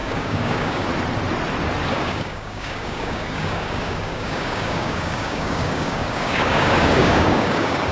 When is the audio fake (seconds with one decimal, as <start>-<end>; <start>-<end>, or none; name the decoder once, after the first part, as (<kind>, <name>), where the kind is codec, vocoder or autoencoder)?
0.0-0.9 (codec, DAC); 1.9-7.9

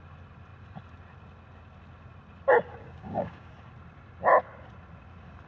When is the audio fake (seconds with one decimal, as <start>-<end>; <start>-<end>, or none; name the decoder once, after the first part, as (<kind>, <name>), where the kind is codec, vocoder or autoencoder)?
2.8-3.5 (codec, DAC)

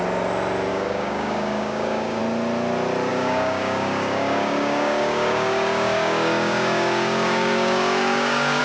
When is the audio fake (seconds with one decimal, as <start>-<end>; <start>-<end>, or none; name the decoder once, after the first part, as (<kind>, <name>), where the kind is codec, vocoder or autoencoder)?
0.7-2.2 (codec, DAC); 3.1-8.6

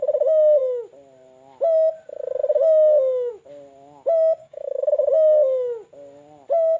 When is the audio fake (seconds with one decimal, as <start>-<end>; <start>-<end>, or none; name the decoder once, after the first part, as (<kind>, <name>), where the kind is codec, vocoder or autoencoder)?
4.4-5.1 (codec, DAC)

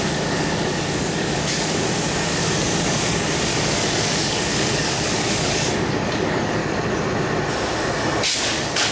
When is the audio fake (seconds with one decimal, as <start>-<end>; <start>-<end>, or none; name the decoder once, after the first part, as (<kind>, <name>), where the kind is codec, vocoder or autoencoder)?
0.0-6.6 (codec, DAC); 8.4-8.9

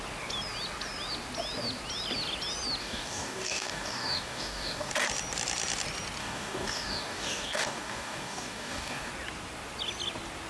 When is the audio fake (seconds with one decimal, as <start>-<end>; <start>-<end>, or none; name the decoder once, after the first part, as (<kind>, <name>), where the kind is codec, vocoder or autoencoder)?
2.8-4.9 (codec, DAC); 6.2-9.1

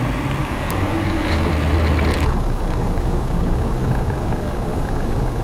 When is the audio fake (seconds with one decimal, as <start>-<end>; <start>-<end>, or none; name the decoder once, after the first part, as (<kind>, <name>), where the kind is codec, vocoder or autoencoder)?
0.4-1.5 (codec, DAC); 2.1-5.4

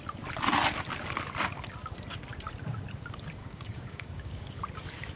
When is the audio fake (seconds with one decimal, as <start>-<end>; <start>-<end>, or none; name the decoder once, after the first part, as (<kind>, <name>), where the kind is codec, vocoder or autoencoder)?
3.4-4.6 (codec, DAC)